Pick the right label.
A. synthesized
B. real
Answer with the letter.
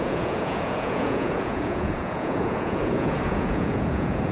A